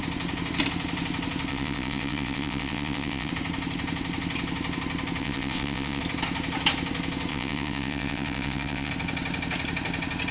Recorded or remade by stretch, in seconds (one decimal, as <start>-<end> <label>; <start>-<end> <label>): 0.0-1.5 recorded; 1.5-3.3 remade; 3.3-5.2 recorded; 5.2-6.0 remade; 6.0-7.3 recorded; 7.3-8.9 remade; 8.9-10.3 recorded